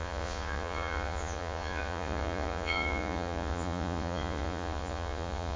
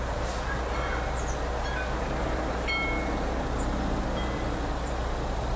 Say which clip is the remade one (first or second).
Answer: first